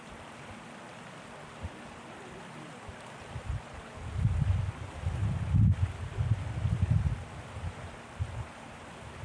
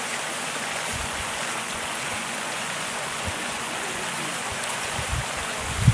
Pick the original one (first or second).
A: first